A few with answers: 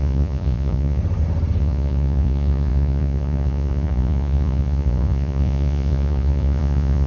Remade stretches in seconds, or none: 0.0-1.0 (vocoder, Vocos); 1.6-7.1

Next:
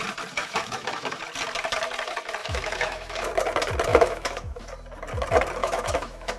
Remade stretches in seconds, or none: 0.4-1.2 (autoencoder, DAC-VAE); 2.4-3.3; 3.9-4.6; 5.6-6.4

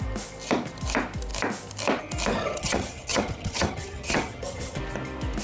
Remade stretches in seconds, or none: 2.4-4.8 (vocoder, HiFi-GAN)